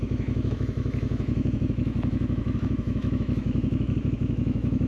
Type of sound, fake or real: fake